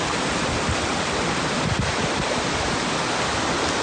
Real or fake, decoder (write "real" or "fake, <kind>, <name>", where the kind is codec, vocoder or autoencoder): real